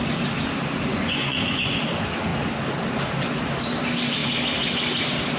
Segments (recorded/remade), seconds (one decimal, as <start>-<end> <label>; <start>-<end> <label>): 0.0-0.9 recorded; 0.9-1.8 remade; 1.8-5.4 recorded